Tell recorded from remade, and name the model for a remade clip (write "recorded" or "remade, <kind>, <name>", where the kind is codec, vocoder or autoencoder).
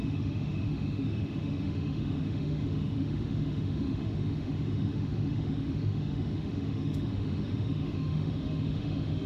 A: remade, autoencoder, DAC-VAE